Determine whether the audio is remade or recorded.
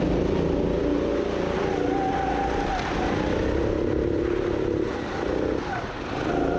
recorded